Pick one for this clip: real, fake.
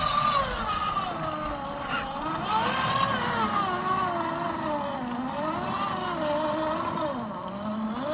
real